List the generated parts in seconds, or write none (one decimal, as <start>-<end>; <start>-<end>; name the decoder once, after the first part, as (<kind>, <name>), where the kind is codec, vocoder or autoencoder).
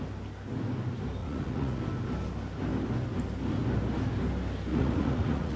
1.2-1.8 (vocoder, Vocos); 4.7-5.6